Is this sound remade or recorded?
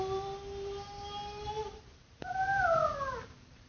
remade